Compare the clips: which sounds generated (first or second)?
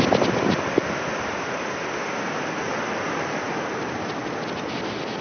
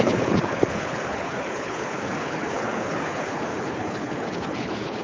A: second